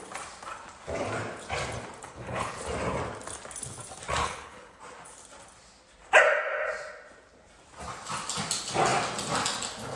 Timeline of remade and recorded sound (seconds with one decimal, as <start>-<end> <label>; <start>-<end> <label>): 0.0-2.0 recorded; 2.0-2.6 remade; 2.6-4.2 recorded; 4.2-4.8 remade; 4.8-9.9 recorded